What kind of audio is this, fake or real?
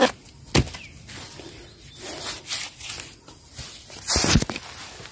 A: real